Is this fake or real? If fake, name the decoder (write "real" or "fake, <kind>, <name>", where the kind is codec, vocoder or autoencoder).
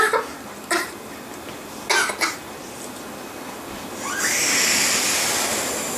real